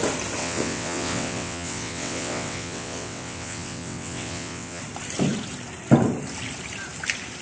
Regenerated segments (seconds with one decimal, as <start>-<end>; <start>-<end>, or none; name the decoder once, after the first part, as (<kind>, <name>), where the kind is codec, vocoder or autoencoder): 0.4-4.8 (vocoder, WaveNeXt)